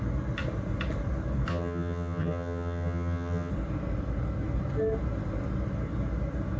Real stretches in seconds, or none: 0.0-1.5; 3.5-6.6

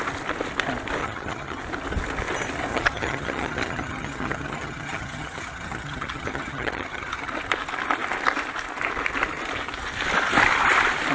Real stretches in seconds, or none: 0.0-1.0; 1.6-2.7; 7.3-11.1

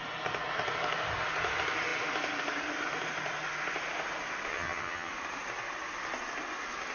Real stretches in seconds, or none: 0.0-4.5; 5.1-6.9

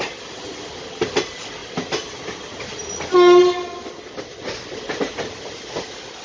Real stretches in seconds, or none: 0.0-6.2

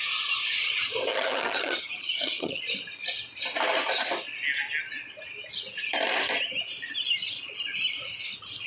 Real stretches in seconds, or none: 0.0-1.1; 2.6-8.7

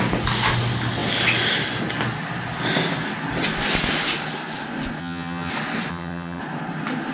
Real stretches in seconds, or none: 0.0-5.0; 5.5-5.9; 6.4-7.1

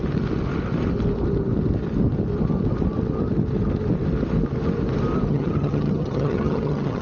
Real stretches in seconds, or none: 0.0-5.3

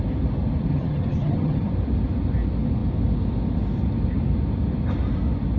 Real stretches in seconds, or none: 0.0-0.7; 1.7-5.6